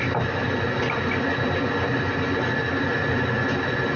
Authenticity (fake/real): real